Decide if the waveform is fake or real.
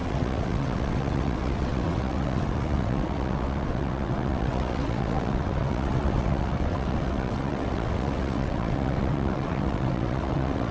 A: fake